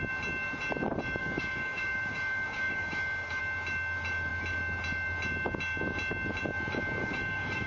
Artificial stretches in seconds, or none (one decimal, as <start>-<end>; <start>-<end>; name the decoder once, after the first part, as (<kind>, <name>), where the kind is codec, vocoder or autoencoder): 1.2-3.4 (codec, DAC); 7.0-7.7